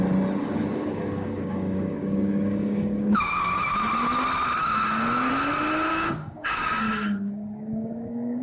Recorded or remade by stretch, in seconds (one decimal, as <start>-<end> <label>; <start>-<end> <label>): 0.0-0.4 recorded; 0.4-3.7 remade; 3.7-4.6 recorded; 4.6-5.3 remade; 5.3-5.9 recorded; 5.9-8.4 remade